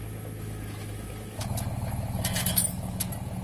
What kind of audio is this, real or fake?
fake